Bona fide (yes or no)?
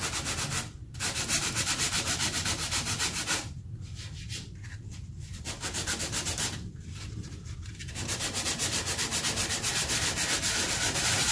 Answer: no